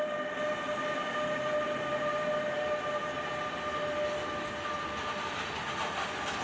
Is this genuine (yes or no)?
yes